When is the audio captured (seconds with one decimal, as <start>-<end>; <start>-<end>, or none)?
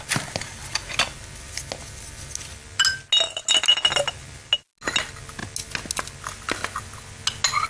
0.0-7.7